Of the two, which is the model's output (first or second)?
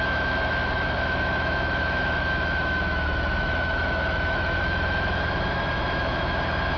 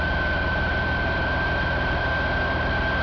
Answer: first